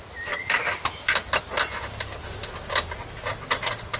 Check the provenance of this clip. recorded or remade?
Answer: recorded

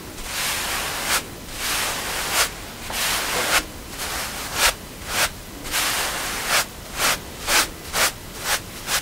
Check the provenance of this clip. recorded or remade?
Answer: recorded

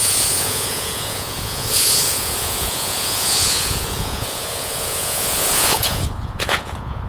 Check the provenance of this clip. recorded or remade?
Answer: remade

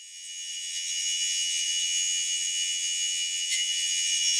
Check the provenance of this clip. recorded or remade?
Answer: remade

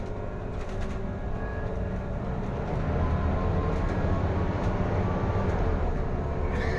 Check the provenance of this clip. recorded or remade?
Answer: recorded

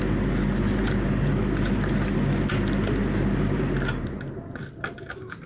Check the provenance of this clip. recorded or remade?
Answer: recorded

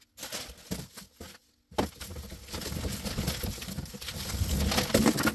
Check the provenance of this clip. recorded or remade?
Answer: recorded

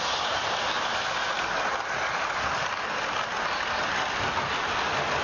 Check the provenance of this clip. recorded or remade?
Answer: recorded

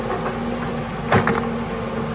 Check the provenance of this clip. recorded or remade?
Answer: recorded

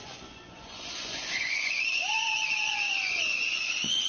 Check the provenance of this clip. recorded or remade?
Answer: remade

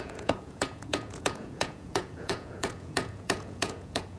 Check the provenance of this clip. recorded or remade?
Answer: remade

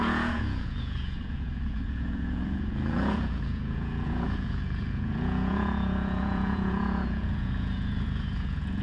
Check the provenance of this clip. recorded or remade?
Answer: remade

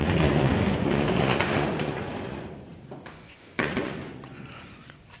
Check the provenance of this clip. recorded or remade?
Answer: remade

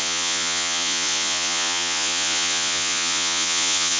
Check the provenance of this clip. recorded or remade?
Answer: remade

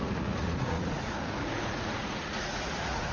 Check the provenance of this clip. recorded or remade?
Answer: remade